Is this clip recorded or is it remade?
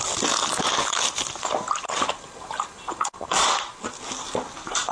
recorded